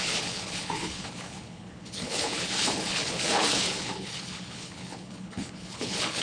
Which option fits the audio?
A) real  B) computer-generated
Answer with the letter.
B